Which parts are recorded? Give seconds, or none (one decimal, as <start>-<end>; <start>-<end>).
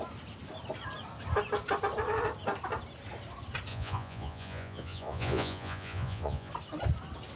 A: 0.0-3.7; 6.5-7.4